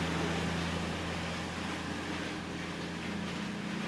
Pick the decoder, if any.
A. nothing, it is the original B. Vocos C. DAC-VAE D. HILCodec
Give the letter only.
A